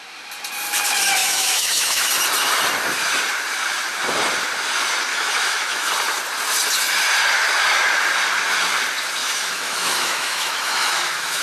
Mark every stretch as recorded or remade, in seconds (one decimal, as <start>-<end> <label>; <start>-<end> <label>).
0.0-1.2 recorded; 1.2-2.1 remade; 2.1-5.1 recorded; 5.1-5.9 remade; 5.9-9.2 recorded; 9.2-11.4 remade